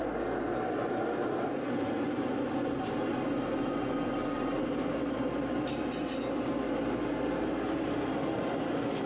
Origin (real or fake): real